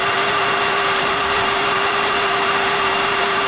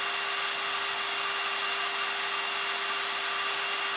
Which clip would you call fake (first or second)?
first